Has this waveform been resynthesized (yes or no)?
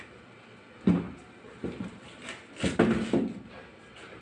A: no